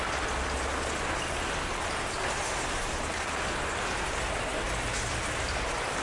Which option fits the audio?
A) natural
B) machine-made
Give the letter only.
A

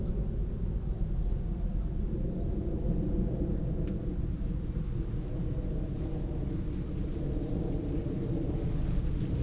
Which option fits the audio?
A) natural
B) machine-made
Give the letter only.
A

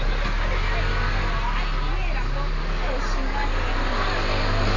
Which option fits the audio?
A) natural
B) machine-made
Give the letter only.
A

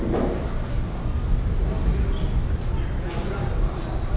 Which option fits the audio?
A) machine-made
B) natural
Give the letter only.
B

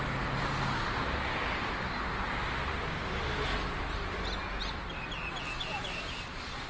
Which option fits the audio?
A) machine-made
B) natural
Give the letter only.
B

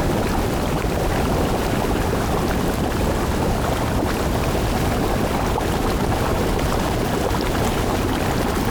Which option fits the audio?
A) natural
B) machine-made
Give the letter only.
A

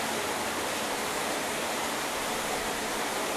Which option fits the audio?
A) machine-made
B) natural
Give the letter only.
B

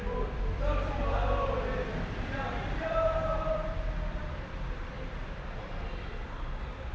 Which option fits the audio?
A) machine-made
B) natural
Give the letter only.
A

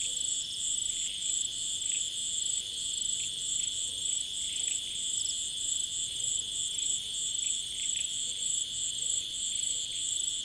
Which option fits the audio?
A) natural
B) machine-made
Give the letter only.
A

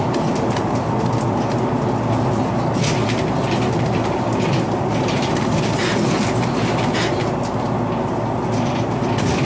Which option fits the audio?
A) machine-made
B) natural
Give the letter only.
B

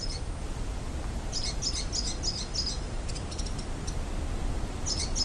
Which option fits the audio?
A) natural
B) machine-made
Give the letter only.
A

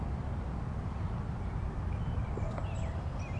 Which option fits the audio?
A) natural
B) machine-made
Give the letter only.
A